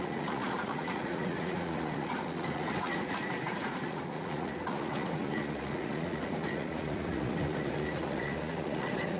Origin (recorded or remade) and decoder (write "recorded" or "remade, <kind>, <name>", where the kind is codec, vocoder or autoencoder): remade, vocoder, Vocos